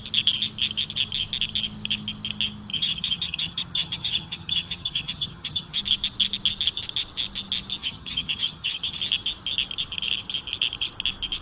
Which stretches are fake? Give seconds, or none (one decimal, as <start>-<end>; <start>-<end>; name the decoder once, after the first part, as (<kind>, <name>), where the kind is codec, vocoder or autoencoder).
2.7-5.8 (vocoder, HiFi-GAN); 7.8-9.0